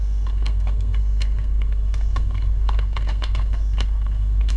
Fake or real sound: fake